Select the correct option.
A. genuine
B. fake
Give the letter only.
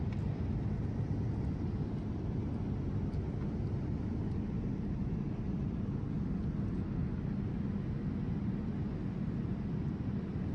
A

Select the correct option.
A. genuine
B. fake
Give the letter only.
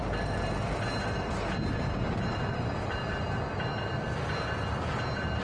A